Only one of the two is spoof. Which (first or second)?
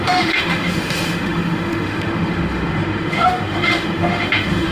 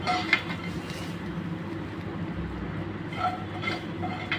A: first